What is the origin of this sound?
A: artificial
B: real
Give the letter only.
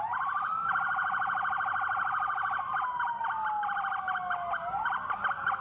B